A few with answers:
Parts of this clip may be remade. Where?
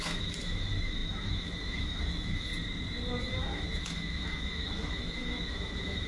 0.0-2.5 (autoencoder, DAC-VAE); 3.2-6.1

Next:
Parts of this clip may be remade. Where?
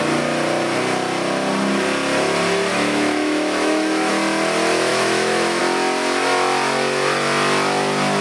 2.7-4.1 (autoencoder, DAC-VAE); 4.9-5.6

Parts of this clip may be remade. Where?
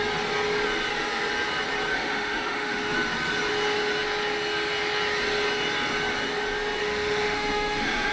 1.9-2.9 (autoencoder, DAC-VAE); 6.8-8.1